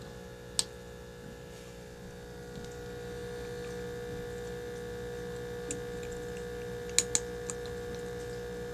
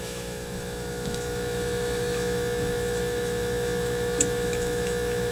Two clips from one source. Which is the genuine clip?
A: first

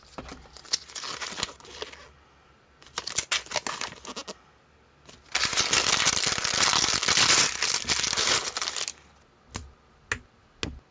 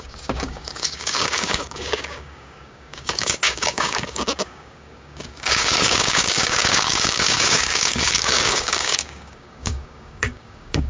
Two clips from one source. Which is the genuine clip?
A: first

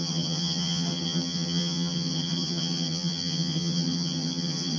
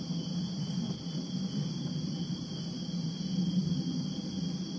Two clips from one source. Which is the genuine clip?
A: second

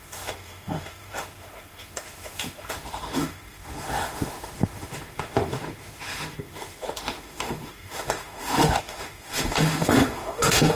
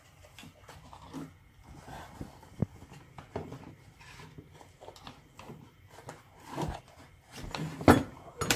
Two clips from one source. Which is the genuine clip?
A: second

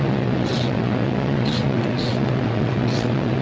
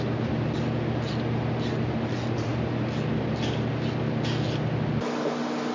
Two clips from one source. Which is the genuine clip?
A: second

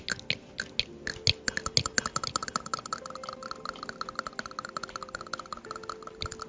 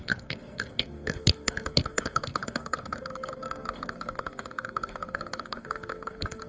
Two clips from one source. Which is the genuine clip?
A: first